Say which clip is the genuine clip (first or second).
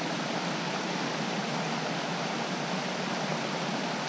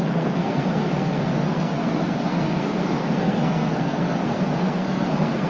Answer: first